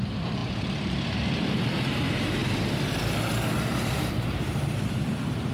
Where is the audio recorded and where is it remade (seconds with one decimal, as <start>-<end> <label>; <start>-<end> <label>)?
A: 0.0-2.4 remade; 2.4-3.5 recorded; 3.5-5.5 remade